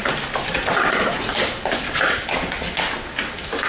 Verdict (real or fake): real